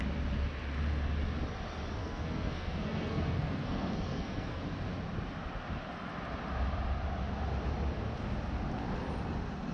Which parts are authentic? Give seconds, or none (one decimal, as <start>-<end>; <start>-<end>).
0.0-2.0; 4.6-9.7